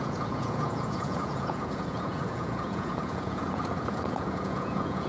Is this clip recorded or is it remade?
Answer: remade